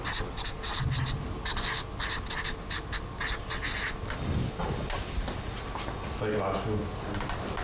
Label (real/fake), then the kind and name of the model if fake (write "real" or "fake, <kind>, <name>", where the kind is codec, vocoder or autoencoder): real